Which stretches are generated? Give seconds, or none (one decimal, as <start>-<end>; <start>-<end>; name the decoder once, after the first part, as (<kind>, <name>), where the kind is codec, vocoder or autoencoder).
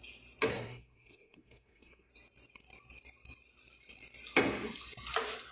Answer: 0.5-2.1 (codec, SNAC)